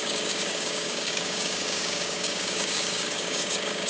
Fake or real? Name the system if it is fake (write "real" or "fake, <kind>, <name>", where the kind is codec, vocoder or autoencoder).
fake, codec, DAC